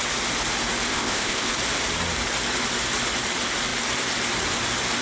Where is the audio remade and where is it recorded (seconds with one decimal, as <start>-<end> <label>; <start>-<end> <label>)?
0.0-0.9 recorded; 0.9-1.5 remade; 1.5-5.0 recorded